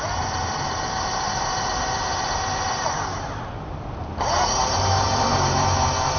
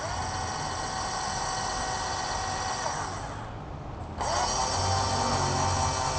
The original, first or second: second